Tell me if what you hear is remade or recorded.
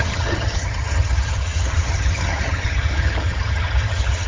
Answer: remade